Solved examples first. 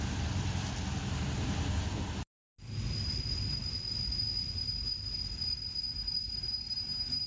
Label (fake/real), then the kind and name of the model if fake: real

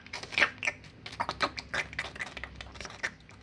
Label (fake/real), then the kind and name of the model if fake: real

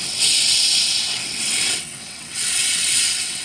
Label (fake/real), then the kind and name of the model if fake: fake, vocoder, WaveNeXt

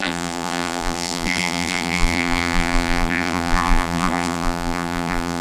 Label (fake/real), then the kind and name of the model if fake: fake, vocoder, BigVGAN v2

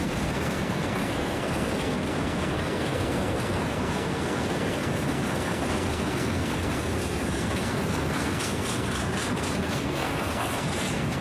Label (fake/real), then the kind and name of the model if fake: fake, codec, SNAC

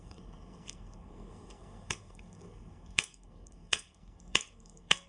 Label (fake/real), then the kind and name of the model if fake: fake, codec, SNAC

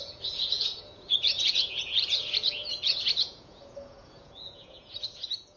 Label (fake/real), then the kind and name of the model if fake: fake, vocoder, Vocos